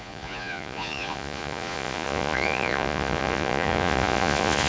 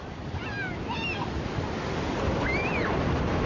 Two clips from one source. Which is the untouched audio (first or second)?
second